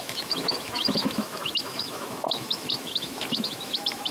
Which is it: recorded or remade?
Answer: remade